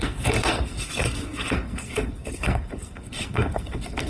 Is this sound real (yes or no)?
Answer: no